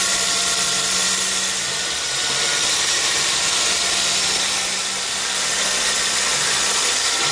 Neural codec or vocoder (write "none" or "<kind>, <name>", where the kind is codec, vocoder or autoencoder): none